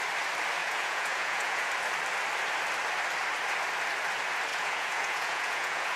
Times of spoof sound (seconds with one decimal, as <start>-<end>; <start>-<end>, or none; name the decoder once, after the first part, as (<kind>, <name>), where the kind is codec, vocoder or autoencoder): 0.6-1.7 (vocoder, Vocos); 4.5-6.0